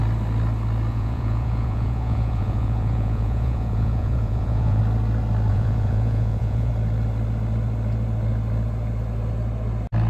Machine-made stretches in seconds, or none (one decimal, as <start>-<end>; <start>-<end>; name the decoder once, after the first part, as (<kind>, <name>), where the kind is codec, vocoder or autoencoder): 0.9-4.8 (vocoder, Vocos); 5.5-6.7